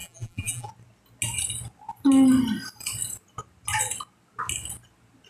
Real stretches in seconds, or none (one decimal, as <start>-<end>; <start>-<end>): 0.7-5.3